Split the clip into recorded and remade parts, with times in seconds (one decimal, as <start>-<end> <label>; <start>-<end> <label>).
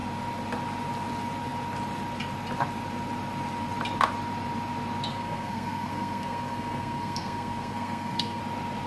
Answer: 0.0-5.1 recorded; 5.1-8.4 remade; 8.4-8.9 recorded